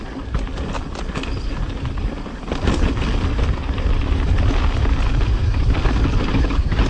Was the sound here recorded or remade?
recorded